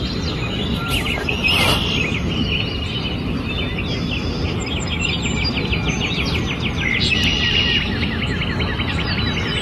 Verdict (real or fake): real